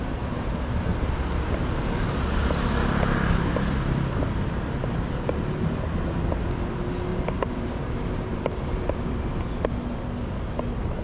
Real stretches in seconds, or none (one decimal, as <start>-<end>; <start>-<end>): 0.0-7.1; 9.4-11.0